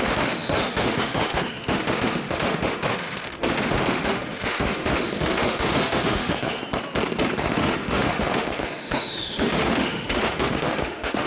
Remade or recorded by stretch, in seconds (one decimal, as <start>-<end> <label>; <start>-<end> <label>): 0.0-6.6 remade; 6.6-7.5 recorded; 7.5-11.3 remade